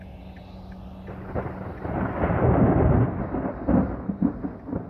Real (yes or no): yes